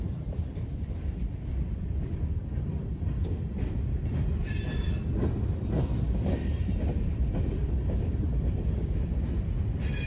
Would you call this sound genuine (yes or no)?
no